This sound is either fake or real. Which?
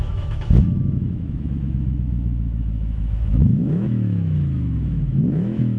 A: fake